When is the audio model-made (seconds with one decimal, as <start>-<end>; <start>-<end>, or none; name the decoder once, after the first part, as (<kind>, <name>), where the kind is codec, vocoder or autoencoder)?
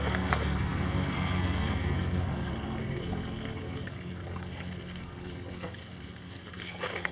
0.0-7.1 (codec, SNAC)